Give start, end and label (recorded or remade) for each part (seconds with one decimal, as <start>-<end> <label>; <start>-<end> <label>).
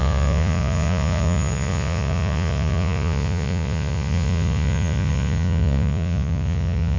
0.0-7.0 remade